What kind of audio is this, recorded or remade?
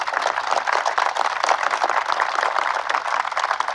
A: recorded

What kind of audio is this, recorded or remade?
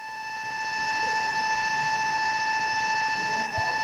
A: recorded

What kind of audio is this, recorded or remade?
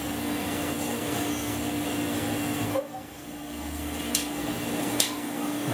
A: remade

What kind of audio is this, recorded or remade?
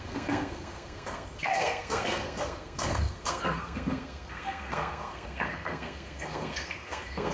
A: remade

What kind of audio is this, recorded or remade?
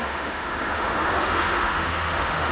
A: remade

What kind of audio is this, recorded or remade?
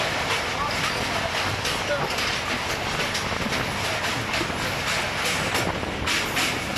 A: recorded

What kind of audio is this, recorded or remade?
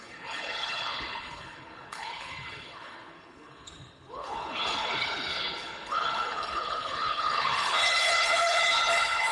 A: remade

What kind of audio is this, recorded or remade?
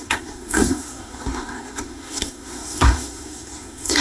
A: remade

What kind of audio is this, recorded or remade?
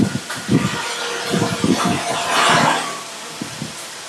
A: recorded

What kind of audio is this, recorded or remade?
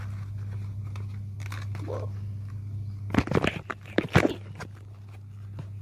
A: recorded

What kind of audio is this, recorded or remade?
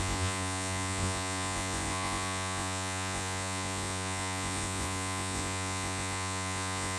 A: remade